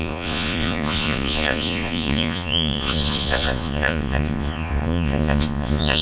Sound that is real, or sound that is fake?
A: fake